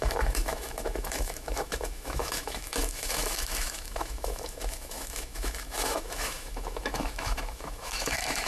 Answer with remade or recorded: remade